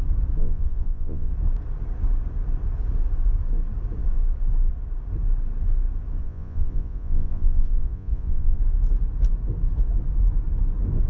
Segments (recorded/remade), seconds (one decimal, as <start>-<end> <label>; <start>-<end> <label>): 0.0-0.4 recorded; 0.4-1.3 remade; 1.3-6.2 recorded; 6.2-8.6 remade; 8.6-11.1 recorded

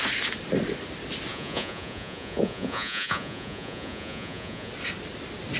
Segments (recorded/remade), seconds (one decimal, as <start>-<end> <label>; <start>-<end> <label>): 0.0-1.3 recorded; 1.3-4.7 remade; 4.7-5.6 recorded

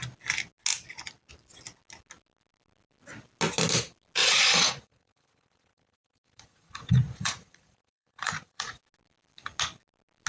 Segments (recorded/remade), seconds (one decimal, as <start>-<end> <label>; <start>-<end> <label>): 0.0-4.2 recorded; 4.2-8.8 remade; 8.8-10.3 recorded

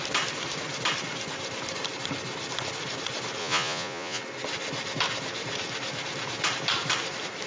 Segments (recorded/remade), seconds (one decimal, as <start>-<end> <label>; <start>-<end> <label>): 0.0-3.4 recorded; 3.4-4.2 remade; 4.2-7.5 recorded

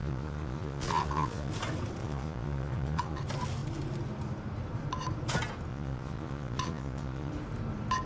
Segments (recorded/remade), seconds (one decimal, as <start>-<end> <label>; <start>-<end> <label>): 0.0-1.5 remade; 1.5-2.0 recorded; 2.0-3.2 remade; 3.2-5.7 recorded; 5.7-7.3 remade; 7.3-8.1 recorded

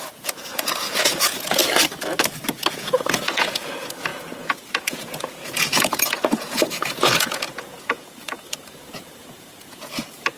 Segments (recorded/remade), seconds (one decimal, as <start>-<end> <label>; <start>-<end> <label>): 0.0-1.6 remade; 1.6-2.5 recorded; 2.5-10.4 remade